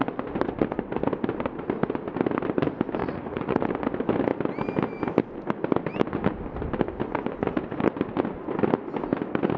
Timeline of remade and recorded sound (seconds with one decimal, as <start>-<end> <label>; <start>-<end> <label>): 0.0-3.0 recorded; 3.0-3.6 remade; 3.6-9.6 recorded